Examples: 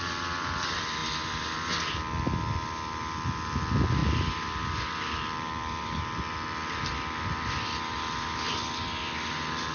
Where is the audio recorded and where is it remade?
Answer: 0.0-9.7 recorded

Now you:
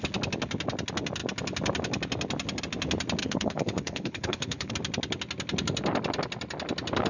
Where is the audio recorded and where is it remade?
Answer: 0.0-3.2 recorded; 3.2-4.7 remade; 4.7-7.1 recorded

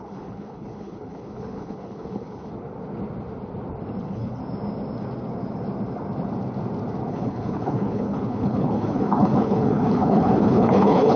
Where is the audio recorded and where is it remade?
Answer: 0.0-2.5 remade; 2.5-4.0 recorded; 4.0-4.4 remade; 4.4-7.1 recorded; 7.1-11.2 remade

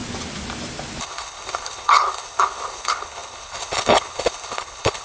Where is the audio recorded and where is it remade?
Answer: 0.0-1.0 recorded; 1.0-5.0 remade

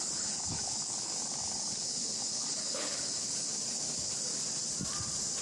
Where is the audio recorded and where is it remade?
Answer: 0.0-4.3 remade; 4.3-5.4 recorded

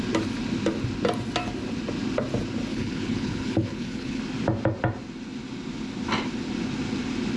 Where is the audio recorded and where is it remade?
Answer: 0.0-2.7 recorded; 2.7-4.2 remade; 4.2-7.4 recorded

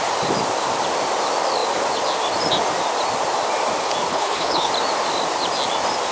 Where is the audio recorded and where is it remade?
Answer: 0.0-4.1 recorded; 4.1-4.7 remade; 4.7-6.1 recorded